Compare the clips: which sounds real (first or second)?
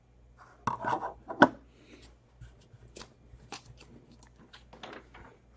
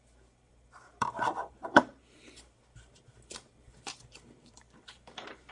first